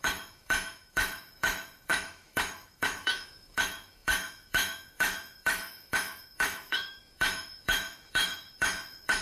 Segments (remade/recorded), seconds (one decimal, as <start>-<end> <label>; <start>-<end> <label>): 0.0-9.2 remade